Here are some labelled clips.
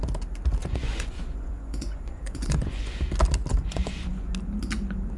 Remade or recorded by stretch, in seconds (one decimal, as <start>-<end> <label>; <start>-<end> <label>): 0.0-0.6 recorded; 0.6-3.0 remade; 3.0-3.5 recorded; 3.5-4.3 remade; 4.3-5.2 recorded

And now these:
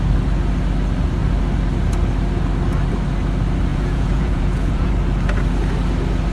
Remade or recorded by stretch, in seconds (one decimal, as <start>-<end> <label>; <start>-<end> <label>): 0.0-3.7 recorded; 3.7-4.9 remade; 4.9-6.3 recorded

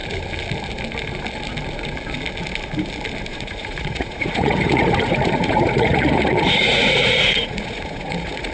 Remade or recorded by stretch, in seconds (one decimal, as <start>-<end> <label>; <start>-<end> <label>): 0.0-3.3 recorded; 3.3-8.5 remade

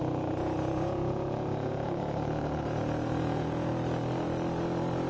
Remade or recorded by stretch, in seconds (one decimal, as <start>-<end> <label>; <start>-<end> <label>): 0.0-3.7 remade; 3.7-5.1 recorded